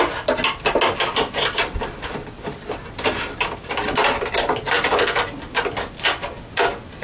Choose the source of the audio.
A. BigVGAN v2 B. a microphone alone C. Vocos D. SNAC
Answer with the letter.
B